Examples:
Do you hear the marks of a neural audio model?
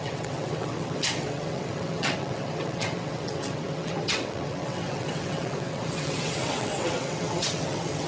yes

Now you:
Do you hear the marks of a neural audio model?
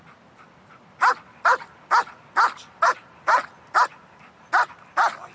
no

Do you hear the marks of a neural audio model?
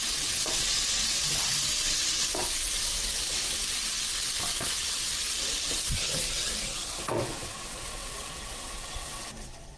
yes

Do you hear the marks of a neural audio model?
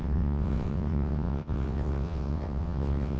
yes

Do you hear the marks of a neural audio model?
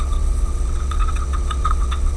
yes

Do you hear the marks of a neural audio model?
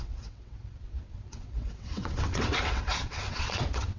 yes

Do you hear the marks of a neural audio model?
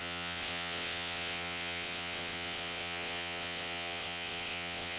yes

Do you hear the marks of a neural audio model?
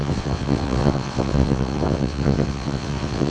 yes